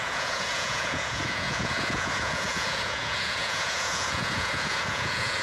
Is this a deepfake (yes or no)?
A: yes